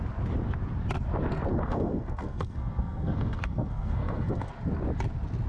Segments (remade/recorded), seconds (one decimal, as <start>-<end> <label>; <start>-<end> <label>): 0.0-1.5 recorded; 1.5-4.5 remade; 4.5-5.5 recorded